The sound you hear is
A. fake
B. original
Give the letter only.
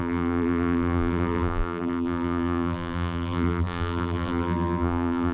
A